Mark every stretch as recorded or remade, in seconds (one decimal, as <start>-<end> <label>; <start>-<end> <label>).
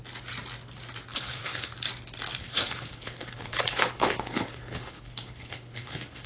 0.0-1.1 recorded; 1.1-1.7 remade; 1.7-2.4 recorded; 2.4-6.3 remade